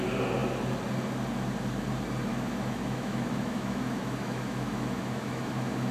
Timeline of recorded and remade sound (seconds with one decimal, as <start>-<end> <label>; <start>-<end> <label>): 0.0-2.3 recorded; 2.3-5.9 remade